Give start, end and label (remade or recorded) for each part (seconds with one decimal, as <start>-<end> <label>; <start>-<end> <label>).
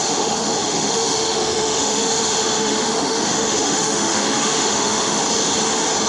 0.0-5.2 remade; 5.2-6.1 recorded